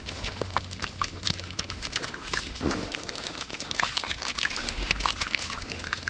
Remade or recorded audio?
remade